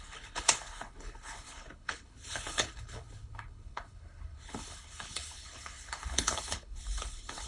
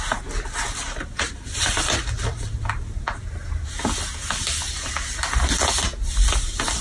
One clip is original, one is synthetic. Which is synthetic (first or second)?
first